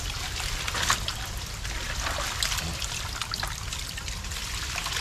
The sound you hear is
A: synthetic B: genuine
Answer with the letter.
B